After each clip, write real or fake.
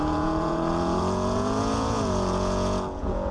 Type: fake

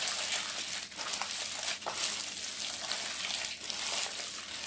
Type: real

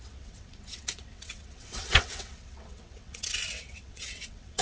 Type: fake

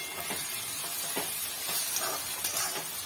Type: real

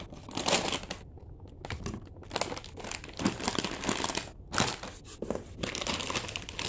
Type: real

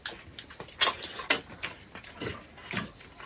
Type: real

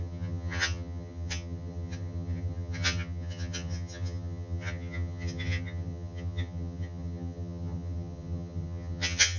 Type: fake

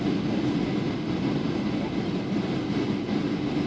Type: real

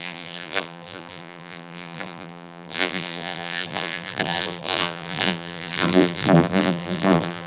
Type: fake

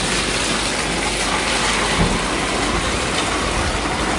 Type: real